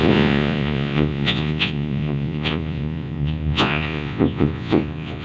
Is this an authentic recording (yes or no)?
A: no